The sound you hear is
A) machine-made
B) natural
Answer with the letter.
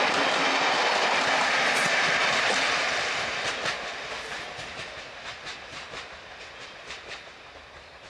B